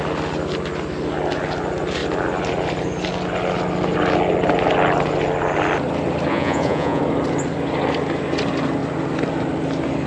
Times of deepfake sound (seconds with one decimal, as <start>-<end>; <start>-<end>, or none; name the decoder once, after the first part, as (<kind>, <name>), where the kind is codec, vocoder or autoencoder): 6.3-7.0 (vocoder, Vocos)